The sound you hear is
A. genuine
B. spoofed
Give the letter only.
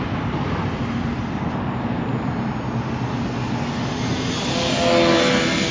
A